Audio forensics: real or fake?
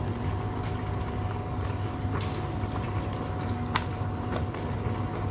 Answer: real